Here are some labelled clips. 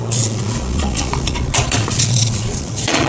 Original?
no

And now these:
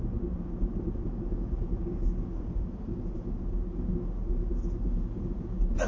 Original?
yes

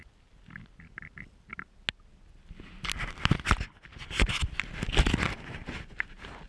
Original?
yes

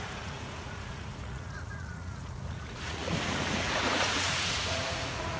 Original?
no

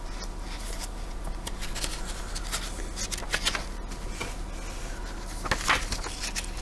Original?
yes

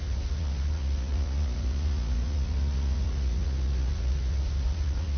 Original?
no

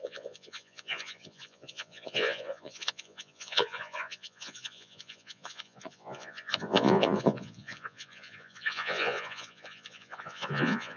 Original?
no